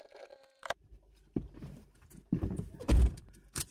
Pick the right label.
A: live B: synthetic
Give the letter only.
B